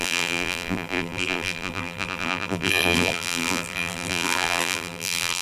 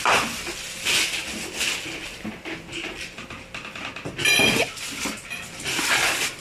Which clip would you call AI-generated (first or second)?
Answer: first